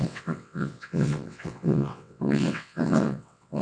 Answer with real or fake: fake